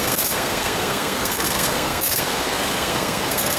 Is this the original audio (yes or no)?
no